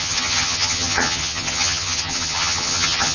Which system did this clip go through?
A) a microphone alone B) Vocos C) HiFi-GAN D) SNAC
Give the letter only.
C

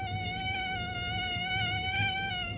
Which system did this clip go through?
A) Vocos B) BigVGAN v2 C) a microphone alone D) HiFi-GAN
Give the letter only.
C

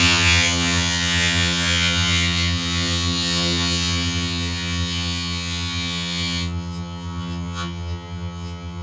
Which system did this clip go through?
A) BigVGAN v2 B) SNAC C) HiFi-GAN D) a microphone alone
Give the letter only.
C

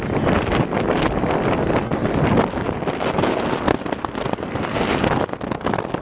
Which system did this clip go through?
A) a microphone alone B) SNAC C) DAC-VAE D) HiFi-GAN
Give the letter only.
A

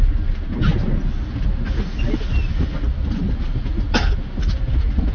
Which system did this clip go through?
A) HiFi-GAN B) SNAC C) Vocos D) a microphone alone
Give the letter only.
D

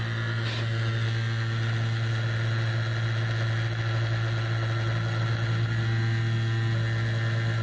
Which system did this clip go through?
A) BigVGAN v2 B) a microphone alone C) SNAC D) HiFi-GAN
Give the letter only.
B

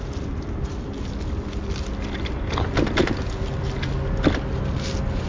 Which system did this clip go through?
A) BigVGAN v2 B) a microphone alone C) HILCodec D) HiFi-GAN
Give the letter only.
B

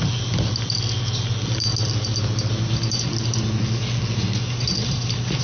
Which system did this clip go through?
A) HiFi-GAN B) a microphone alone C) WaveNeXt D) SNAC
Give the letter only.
B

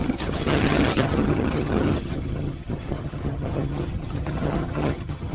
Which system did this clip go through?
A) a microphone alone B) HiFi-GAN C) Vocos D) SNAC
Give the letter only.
B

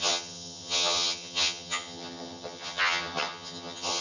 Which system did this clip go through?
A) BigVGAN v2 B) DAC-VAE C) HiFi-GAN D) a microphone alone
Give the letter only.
C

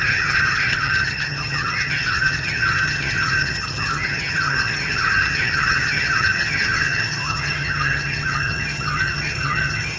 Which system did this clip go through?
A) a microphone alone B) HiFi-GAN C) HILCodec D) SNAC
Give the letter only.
B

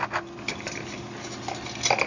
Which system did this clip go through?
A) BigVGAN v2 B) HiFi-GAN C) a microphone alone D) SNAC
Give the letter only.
C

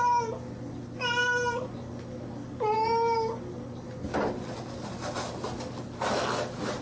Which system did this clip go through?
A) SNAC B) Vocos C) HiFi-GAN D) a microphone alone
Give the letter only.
D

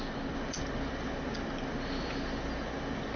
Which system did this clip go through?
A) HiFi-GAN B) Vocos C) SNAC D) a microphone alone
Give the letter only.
D